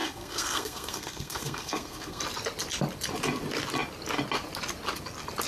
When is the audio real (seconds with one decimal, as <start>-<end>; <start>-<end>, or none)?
2.2-5.5